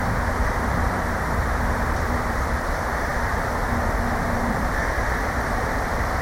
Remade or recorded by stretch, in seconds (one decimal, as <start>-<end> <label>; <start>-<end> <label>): 0.0-3.1 remade; 3.1-4.5 recorded; 4.5-6.2 remade